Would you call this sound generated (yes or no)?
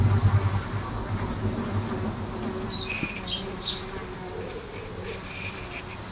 no